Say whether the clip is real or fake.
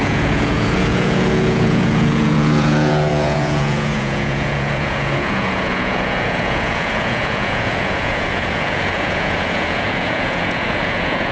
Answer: fake